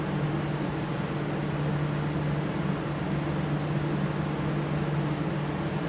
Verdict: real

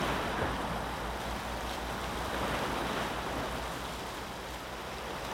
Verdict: real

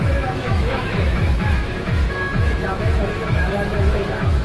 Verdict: fake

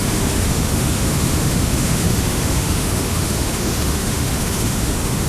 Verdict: fake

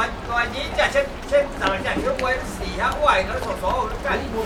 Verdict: real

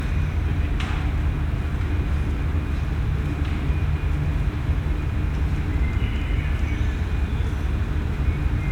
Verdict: real